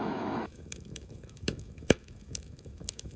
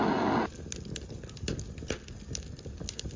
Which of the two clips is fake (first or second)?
first